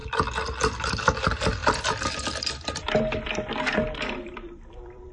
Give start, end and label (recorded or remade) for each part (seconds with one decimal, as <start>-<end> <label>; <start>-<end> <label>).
0.0-1.2 recorded; 1.2-1.6 remade; 1.6-4.0 recorded; 4.0-5.1 remade